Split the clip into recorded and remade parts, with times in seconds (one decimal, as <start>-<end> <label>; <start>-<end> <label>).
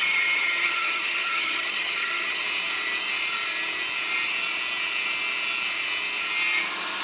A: 0.0-2.4 remade; 2.4-7.0 recorded